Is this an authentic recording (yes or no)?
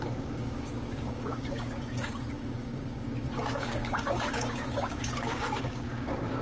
no